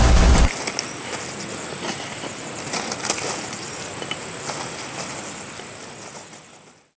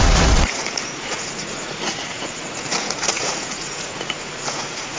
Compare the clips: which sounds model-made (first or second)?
second